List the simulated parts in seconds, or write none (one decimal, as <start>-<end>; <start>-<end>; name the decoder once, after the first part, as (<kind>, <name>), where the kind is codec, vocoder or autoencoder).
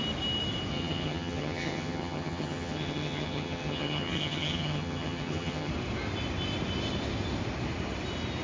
0.7-5.7 (vocoder, HiFi-GAN)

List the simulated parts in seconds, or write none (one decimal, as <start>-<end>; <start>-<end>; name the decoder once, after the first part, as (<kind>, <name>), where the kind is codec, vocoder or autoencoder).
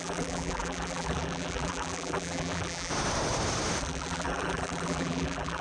0.0-2.9 (vocoder, BigVGAN v2); 3.8-5.6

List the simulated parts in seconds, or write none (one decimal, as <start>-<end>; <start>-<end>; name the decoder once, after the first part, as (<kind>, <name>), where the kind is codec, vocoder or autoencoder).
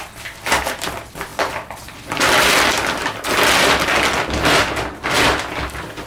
none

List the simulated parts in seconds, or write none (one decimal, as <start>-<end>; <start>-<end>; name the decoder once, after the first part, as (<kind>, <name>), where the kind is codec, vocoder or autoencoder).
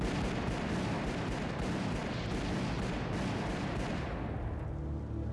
none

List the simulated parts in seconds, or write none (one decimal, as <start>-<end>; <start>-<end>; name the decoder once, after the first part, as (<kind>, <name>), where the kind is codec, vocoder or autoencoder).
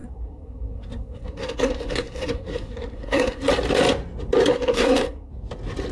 0.0-3.5 (codec, SNAC); 4.5-5.3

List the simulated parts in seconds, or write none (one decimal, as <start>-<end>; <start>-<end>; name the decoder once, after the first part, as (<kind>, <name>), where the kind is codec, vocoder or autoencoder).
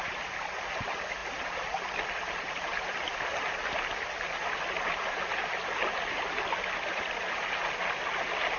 none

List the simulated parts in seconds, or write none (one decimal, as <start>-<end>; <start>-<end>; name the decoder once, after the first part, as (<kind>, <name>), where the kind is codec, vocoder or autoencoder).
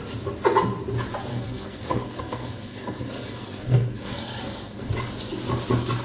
1.3-4.9 (codec, SNAC)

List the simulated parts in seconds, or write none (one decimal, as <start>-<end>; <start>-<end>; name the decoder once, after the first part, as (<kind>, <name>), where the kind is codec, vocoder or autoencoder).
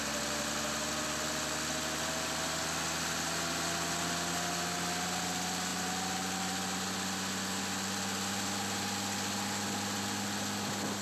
none